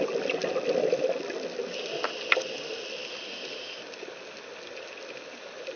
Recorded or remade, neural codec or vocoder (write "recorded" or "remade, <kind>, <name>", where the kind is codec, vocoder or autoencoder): recorded